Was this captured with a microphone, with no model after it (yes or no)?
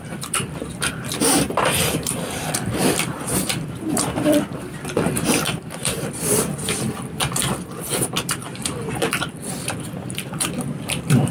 no